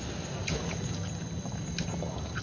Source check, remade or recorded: recorded